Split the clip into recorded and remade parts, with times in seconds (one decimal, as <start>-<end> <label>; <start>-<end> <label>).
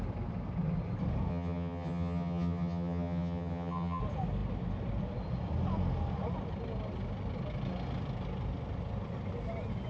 0.0-1.3 recorded; 1.3-4.0 remade; 4.0-9.9 recorded